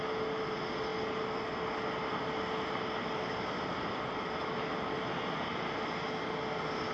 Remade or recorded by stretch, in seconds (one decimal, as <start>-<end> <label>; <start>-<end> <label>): 0.0-6.9 recorded